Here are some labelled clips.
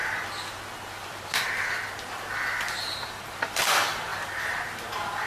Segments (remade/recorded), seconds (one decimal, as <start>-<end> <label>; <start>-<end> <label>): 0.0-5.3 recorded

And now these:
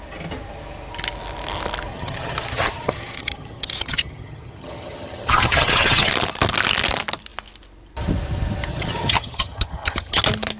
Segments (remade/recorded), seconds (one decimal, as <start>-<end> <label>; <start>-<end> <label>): 0.0-1.9 recorded; 1.9-6.1 remade; 6.1-8.7 recorded; 8.7-10.2 remade; 10.2-10.6 recorded

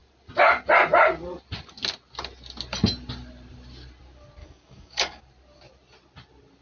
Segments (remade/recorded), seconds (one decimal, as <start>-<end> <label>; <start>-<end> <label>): 0.0-4.4 recorded; 4.4-5.2 remade; 5.2-6.6 recorded